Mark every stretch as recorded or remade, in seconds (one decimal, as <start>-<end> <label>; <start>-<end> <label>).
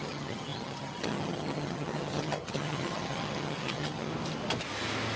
0.0-4.1 remade; 4.1-5.2 recorded